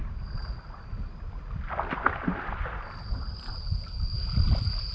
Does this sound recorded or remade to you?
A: recorded